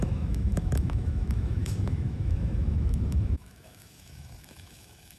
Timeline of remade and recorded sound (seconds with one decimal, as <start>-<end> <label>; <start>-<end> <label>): 0.0-5.2 remade